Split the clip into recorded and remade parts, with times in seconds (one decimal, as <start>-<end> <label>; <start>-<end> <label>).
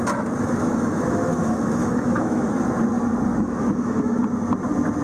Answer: 0.0-0.7 recorded; 0.7-2.5 remade; 2.5-3.3 recorded; 3.3-4.2 remade; 4.2-5.0 recorded